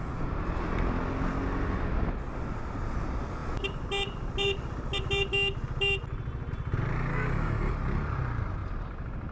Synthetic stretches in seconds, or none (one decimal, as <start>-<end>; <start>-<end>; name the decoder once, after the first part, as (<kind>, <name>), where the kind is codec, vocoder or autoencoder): 7.1-7.7 (codec, DAC)